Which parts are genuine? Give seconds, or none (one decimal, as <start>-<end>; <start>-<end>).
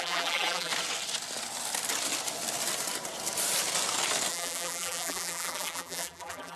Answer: 0.7-4.3